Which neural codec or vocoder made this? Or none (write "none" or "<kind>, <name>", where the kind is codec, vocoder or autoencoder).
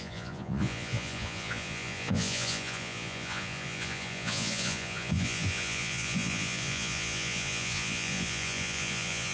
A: vocoder, Vocos